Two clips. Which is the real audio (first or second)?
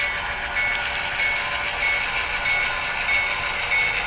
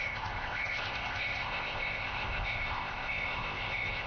first